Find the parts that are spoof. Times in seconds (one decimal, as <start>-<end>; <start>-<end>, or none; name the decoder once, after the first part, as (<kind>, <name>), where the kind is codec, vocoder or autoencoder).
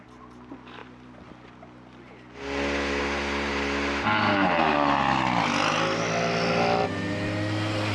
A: none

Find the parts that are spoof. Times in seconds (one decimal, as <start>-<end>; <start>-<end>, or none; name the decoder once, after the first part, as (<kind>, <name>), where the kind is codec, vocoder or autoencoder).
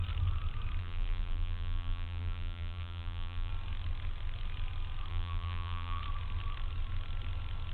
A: 0.8-3.5 (vocoder, BigVGAN v2); 5.1-6.0